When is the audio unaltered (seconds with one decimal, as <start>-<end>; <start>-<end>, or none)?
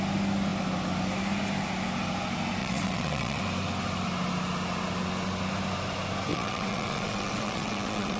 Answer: 0.0-2.6; 3.4-6.3